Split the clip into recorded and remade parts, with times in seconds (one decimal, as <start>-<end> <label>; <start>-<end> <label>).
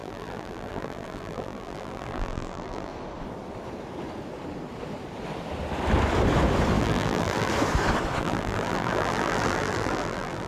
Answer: 0.0-2.9 remade; 2.9-6.8 recorded; 6.8-7.5 remade; 7.5-8.2 recorded; 8.2-10.5 remade